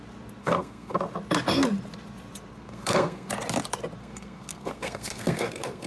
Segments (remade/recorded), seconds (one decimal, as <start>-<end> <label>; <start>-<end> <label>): 0.0-0.4 recorded; 0.4-1.0 remade; 1.0-2.5 recorded; 2.5-3.3 remade; 3.3-4.0 recorded; 4.0-5.9 remade

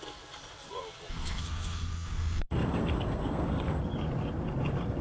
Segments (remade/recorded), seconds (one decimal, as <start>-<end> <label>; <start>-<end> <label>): 0.0-1.1 recorded; 1.1-3.8 remade; 3.8-5.0 recorded